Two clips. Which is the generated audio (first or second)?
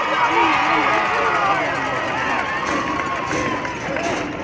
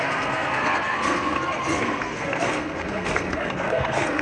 second